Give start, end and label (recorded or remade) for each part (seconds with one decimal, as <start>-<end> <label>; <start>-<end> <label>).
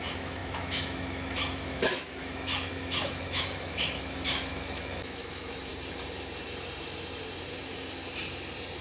0.0-5.7 remade; 5.7-8.8 recorded